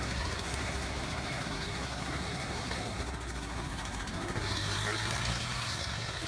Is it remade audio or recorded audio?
remade